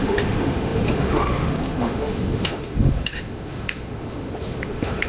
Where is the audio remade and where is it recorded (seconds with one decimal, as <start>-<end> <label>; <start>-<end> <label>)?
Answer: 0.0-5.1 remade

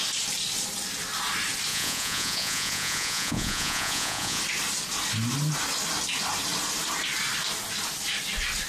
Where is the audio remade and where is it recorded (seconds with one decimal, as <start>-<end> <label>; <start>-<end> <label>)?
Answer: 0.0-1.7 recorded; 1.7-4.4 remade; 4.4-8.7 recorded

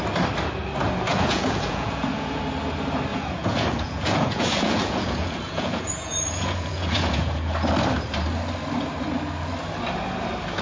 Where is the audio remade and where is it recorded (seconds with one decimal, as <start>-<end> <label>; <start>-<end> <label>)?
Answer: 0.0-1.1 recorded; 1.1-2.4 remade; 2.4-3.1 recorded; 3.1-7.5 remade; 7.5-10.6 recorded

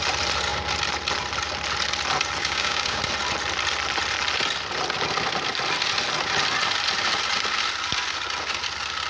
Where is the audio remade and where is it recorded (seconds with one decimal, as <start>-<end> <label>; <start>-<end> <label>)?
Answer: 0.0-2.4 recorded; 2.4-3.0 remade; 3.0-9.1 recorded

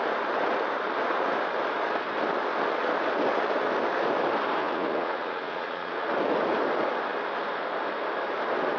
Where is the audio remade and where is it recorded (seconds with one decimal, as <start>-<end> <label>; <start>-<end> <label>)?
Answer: 0.0-4.6 recorded; 4.6-6.1 remade; 6.1-8.8 recorded

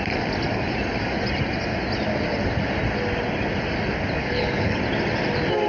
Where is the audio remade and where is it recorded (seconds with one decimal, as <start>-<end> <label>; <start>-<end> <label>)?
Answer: 0.0-4.2 recorded; 4.2-4.8 remade; 4.8-5.7 recorded

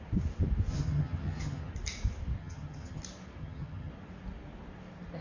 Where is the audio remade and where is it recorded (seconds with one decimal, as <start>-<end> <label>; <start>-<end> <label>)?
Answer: 0.0-0.7 recorded; 0.7-1.7 remade; 1.7-2.4 recorded; 2.4-3.0 remade; 3.0-3.4 recorded; 3.4-3.9 remade; 3.9-5.2 recorded

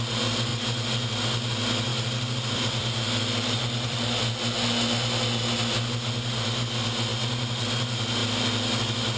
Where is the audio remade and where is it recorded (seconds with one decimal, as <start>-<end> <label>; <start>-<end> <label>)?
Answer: 0.0-1.9 recorded; 1.9-4.3 remade; 4.3-7.1 recorded; 7.1-7.6 remade; 7.6-9.2 recorded